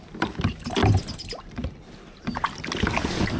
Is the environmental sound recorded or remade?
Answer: recorded